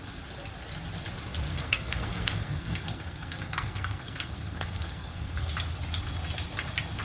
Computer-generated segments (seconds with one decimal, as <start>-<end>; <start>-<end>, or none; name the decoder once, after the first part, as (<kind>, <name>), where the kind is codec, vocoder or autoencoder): 1.5-5.5 (codec, SNAC)